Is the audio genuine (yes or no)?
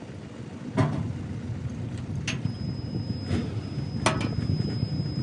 yes